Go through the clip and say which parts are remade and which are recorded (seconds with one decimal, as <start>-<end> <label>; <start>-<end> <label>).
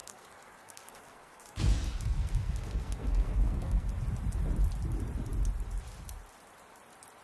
0.0-3.9 remade; 3.9-7.2 recorded